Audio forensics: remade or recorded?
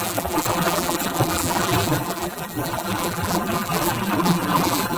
remade